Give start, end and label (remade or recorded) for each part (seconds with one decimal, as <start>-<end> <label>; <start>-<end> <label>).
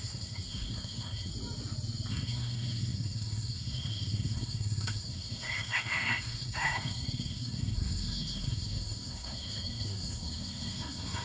0.0-1.3 remade; 1.3-2.1 recorded; 2.1-11.2 remade